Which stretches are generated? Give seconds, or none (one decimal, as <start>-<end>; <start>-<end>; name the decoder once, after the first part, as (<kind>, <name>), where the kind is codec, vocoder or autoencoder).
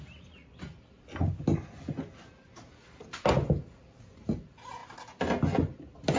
none